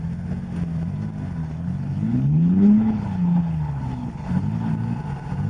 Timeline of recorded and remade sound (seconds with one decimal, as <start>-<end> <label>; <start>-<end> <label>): 0.0-1.4 recorded; 1.4-4.7 remade; 4.7-5.5 recorded

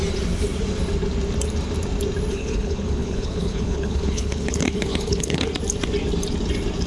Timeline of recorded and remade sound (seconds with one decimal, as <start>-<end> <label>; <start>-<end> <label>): 0.0-2.3 recorded; 2.3-5.5 remade; 5.5-6.9 recorded